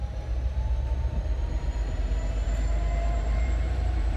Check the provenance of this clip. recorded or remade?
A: remade